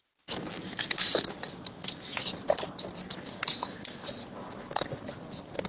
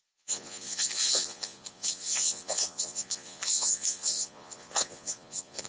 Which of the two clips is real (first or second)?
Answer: first